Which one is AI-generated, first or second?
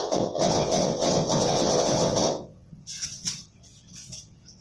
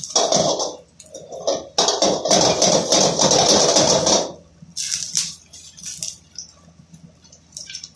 first